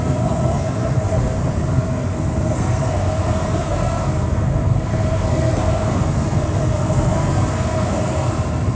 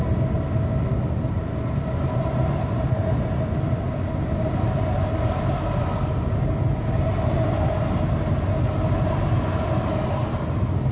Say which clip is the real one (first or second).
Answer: second